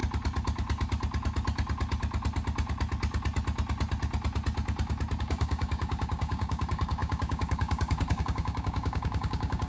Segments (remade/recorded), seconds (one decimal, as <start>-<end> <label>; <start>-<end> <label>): 0.0-5.2 recorded; 5.2-9.7 remade